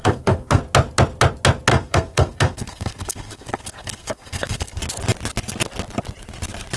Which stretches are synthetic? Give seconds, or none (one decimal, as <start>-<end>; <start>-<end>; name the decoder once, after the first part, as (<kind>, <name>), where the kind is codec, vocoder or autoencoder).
0.0-0.6 (codec, SNAC); 1.7-4.8